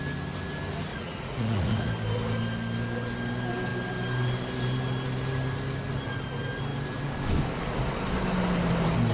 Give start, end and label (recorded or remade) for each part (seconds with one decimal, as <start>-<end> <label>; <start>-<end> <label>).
0.0-0.9 recorded; 0.9-1.9 remade; 1.9-9.1 recorded